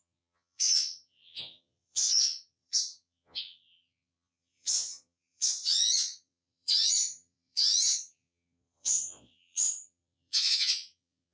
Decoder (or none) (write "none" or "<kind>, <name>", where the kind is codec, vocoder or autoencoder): vocoder, Vocos